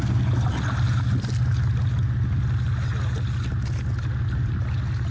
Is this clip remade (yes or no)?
no